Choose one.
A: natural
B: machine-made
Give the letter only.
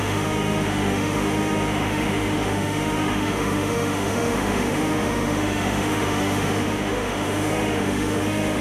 B